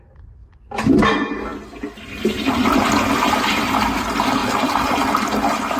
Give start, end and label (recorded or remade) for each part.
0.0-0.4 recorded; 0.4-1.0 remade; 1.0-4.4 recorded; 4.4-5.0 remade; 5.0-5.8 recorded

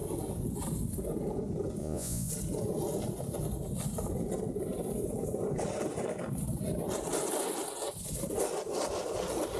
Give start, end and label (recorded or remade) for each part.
0.0-1.8 recorded; 1.8-2.3 remade; 2.3-9.6 recorded